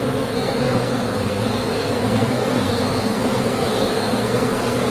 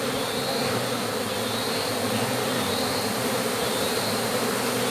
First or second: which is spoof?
first